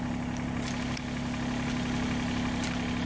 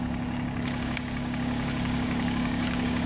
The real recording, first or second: first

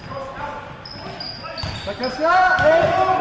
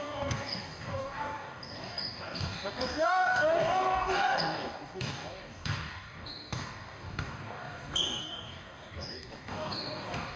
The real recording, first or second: first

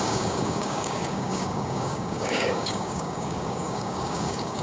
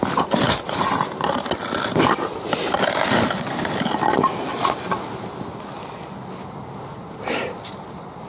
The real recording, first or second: second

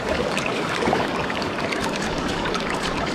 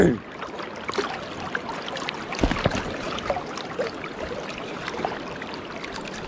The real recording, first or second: second